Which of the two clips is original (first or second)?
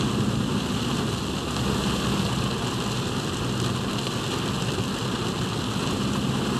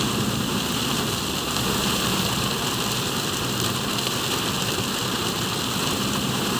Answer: first